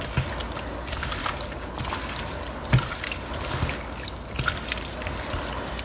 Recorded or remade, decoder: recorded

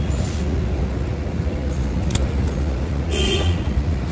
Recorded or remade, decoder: remade, vocoder, Vocos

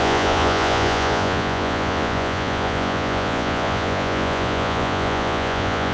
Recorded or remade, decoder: remade, vocoder, Vocos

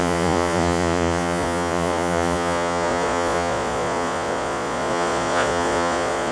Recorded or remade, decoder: remade, vocoder, Vocos